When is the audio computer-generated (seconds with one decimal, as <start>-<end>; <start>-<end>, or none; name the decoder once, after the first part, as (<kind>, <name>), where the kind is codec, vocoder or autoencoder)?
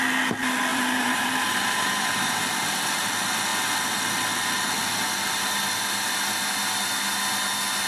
0.7-2.4 (vocoder, BigVGAN v2)